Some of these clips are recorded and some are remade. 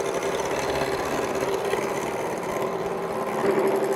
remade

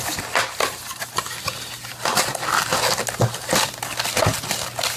recorded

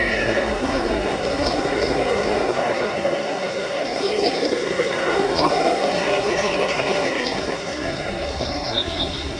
remade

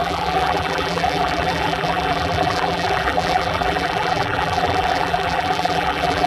remade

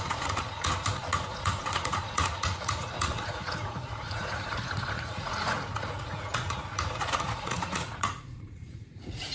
remade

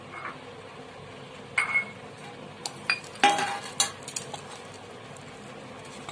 recorded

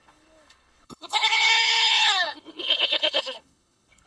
remade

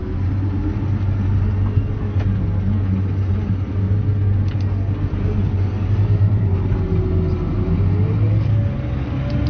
recorded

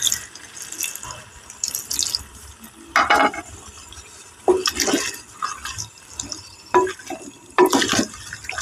recorded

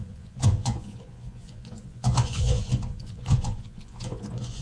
remade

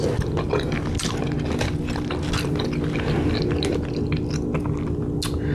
recorded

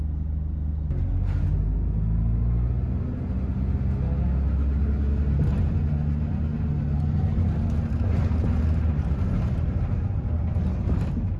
recorded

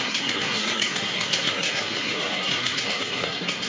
remade